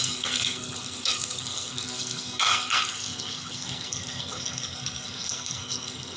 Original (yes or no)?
no